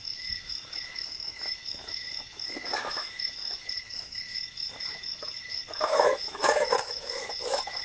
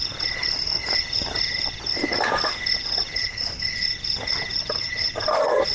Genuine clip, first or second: second